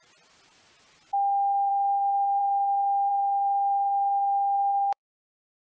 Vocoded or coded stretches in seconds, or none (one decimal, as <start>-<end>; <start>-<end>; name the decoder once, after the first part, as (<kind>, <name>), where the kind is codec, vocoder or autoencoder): 1.7-2.4 (codec, DAC); 3.1-5.1